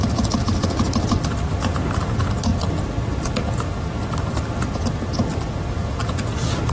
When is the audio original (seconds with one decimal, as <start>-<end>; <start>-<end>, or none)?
0.0-6.7